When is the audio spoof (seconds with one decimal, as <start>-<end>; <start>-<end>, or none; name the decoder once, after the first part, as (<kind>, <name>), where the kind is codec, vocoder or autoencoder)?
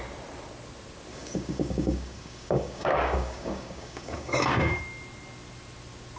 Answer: 1.1-4.8 (codec, DAC)